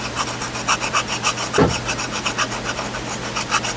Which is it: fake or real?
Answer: real